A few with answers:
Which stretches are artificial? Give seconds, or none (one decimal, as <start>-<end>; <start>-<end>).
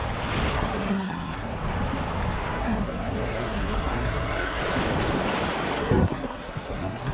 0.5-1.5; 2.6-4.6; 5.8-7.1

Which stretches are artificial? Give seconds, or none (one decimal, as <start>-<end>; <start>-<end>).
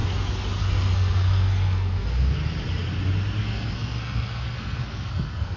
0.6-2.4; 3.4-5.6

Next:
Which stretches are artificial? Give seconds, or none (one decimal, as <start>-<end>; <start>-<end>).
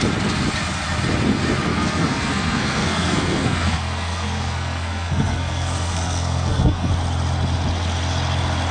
1.7-6.9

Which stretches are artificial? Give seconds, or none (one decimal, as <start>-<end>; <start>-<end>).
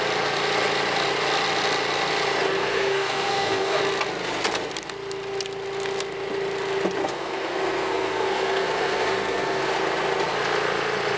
2.6-3.8; 7.0-9.6